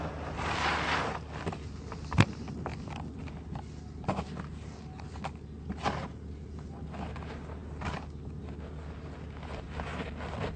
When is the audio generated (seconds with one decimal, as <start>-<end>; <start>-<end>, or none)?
2.7-3.2